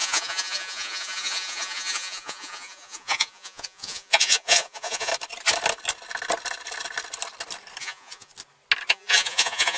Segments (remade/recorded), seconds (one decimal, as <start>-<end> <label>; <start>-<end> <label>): 0.0-5.1 remade; 5.1-7.8 recorded; 7.8-8.3 remade; 8.3-8.9 recorded; 8.9-9.8 remade